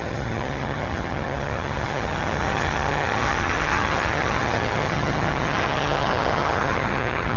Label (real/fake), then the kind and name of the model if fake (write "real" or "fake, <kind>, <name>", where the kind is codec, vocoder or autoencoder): fake, vocoder, HiFi-GAN